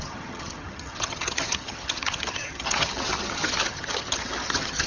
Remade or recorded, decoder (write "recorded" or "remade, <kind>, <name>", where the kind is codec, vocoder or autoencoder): remade, vocoder, HiFi-GAN